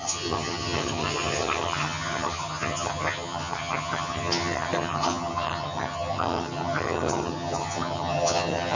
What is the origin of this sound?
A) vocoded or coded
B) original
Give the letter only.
A